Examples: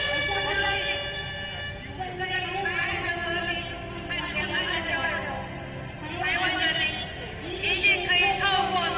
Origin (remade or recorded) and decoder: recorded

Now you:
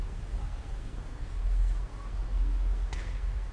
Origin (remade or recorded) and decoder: remade, codec, SNAC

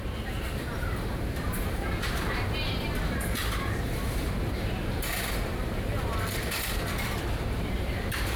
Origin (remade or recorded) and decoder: remade, vocoder, BigVGAN v2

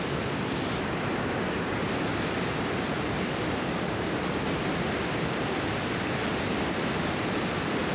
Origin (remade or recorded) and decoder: remade, vocoder, BigVGAN v2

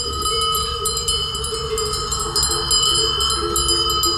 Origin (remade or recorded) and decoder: recorded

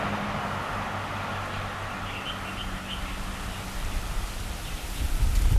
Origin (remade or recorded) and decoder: recorded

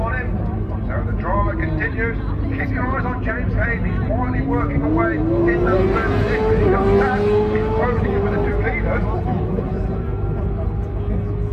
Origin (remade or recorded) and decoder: recorded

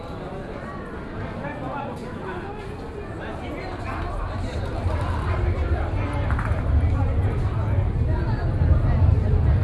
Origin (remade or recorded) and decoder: recorded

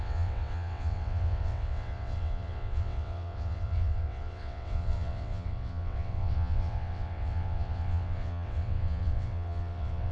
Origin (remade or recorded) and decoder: remade, vocoder, WaveNeXt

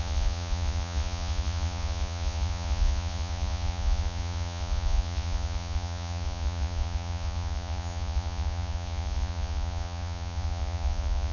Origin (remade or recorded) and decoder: remade, vocoder, Vocos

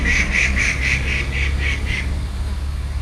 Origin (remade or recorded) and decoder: remade, codec, DAC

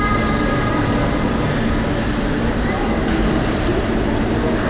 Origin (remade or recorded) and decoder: recorded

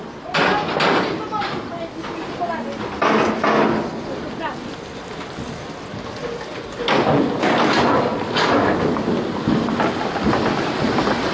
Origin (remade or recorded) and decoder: recorded